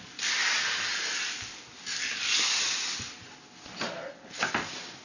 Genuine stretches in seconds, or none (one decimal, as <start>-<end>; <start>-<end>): 0.0-5.0